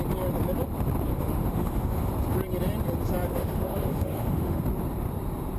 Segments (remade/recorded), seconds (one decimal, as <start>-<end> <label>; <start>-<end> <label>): 0.0-1.1 recorded; 1.1-2.1 remade; 2.1-3.3 recorded; 3.3-4.6 remade; 4.6-5.6 recorded